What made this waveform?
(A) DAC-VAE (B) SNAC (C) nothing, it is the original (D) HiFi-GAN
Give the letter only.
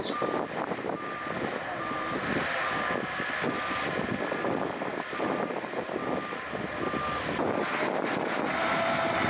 C